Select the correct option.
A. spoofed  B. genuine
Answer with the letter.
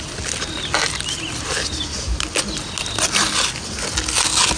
B